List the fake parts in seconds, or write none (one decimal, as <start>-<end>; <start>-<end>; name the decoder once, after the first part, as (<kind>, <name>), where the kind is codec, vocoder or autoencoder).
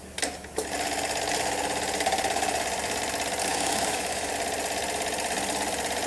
3.5-4.3 (autoencoder, DAC-VAE)